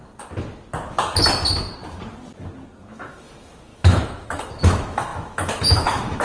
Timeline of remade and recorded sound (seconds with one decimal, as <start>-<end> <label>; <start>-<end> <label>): 0.0-2.8 recorded; 2.8-6.2 remade

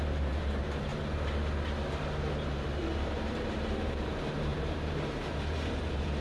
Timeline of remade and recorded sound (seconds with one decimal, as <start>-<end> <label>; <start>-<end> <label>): 0.0-0.9 remade; 0.9-2.2 recorded; 2.2-6.2 remade

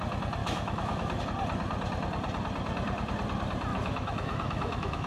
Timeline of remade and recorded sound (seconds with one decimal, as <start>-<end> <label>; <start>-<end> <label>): 0.0-0.4 recorded; 0.4-1.2 remade; 1.2-3.7 recorded; 3.7-5.1 remade